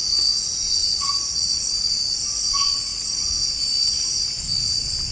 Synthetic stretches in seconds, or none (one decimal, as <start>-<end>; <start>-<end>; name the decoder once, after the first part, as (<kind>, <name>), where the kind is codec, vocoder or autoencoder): 0.8-1.6 (vocoder, Vocos)